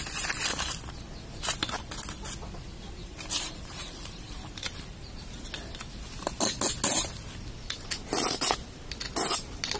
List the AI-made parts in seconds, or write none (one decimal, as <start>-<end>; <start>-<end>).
3.0-5.1